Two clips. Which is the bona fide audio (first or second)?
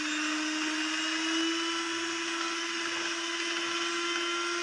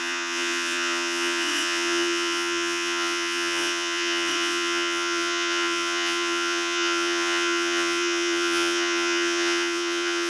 first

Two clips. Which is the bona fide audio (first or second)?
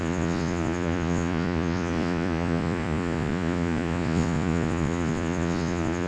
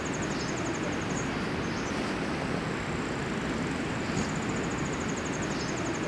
second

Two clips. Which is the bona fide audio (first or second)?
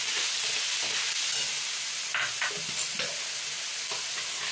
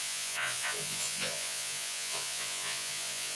first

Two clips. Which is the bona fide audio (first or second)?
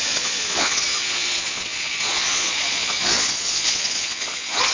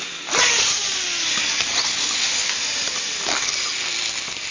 second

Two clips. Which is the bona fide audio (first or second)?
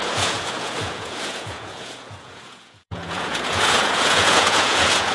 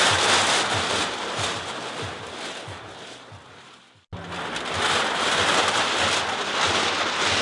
second